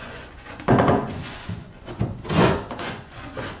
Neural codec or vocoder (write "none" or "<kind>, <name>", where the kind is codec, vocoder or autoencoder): vocoder, Vocos